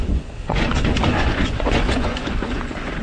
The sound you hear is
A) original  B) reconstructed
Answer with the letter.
B